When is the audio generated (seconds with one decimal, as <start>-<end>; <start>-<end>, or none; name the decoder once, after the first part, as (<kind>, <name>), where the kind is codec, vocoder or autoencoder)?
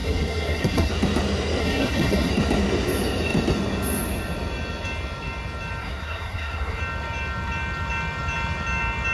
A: 0.0-0.9 (codec, SNAC); 1.6-2.3; 5.8-6.8